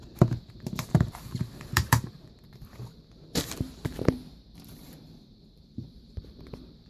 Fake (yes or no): yes